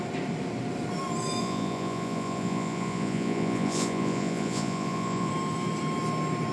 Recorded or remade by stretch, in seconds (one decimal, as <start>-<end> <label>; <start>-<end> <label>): 0.0-1.4 recorded; 1.4-5.3 remade; 5.3-6.5 recorded